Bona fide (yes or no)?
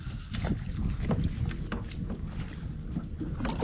yes